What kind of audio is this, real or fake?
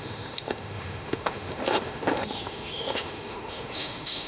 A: fake